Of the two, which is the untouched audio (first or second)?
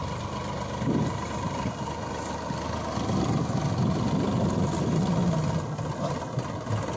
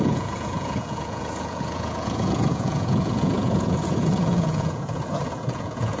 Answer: first